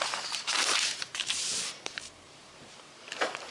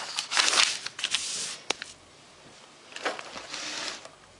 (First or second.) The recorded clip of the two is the second